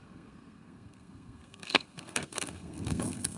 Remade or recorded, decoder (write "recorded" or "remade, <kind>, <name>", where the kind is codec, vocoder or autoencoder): remade, codec, SNAC